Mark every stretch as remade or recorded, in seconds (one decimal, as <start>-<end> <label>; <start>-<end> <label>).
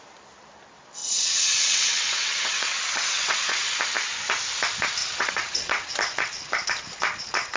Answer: 0.0-1.0 recorded; 1.0-3.8 remade; 3.8-5.0 recorded; 5.0-5.9 remade; 5.9-7.6 recorded